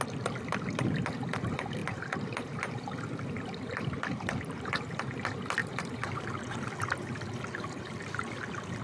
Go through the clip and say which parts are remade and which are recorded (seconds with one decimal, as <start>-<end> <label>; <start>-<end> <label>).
0.0-1.8 recorded; 1.8-4.6 remade; 4.6-5.6 recorded; 5.6-6.7 remade; 6.7-8.8 recorded